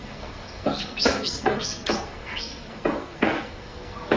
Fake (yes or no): yes